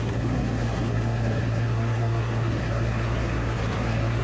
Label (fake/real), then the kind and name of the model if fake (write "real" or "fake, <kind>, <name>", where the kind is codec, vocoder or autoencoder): fake, codec, SNAC